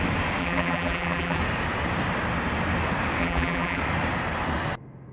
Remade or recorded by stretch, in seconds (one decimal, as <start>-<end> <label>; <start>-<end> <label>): 0.0-0.4 recorded; 0.4-1.4 remade; 1.4-3.2 recorded; 3.2-3.8 remade; 3.8-5.1 recorded